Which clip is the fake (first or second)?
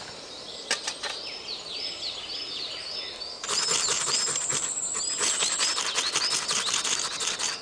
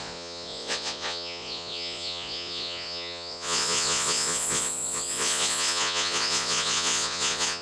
second